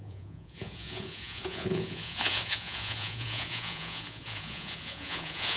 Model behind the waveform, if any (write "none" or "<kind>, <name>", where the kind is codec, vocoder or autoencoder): vocoder, Vocos